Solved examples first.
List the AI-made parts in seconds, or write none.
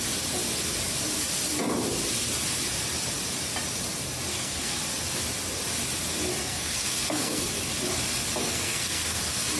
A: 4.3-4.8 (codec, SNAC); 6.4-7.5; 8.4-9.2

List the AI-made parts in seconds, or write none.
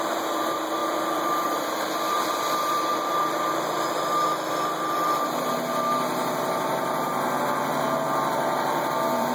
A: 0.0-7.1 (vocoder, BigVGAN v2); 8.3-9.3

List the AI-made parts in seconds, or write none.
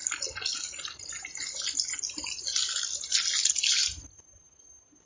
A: none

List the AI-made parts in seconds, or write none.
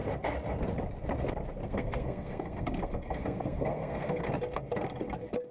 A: 1.6-4.2 (codec, SNAC)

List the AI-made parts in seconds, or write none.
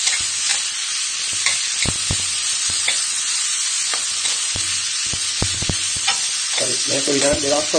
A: 0.0-0.5 (vocoder, Vocos); 2.2-7.8